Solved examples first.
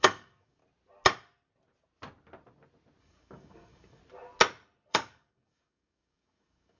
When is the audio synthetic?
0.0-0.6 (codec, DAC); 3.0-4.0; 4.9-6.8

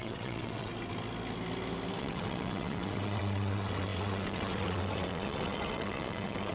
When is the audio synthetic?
0.0-0.7 (vocoder, WaveNeXt); 2.0-6.5

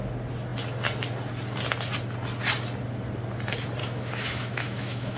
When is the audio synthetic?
3.8-5.2 (autoencoder, DAC-VAE)

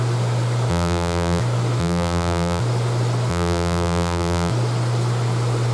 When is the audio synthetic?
0.7-1.4 (vocoder, BigVGAN v2); 1.8-2.6; 3.3-4.5

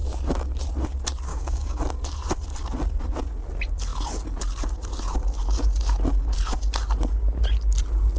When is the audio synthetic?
1.3-1.8 (codec, DAC)